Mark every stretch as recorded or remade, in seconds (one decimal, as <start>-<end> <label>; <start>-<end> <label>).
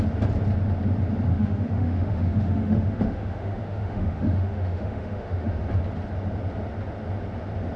0.0-1.3 recorded; 1.3-5.6 remade; 5.6-7.8 recorded